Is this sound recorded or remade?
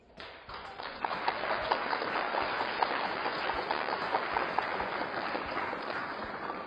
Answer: remade